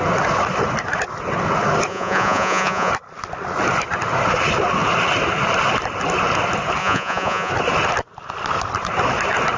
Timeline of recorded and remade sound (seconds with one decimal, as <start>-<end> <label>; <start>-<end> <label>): 0.0-1.9 recorded; 1.9-2.9 remade; 2.9-6.8 recorded; 6.8-7.5 remade; 7.5-9.6 recorded